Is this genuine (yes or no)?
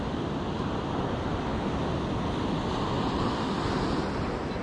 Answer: yes